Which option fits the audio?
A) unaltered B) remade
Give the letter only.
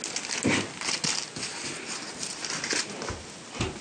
A